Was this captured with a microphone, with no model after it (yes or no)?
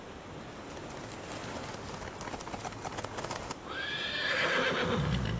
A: yes